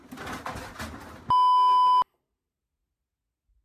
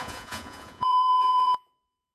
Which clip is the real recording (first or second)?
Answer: first